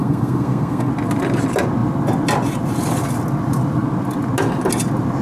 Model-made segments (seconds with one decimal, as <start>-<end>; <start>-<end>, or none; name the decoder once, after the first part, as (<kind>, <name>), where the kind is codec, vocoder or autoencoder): 0.0-0.9 (codec, SNAC)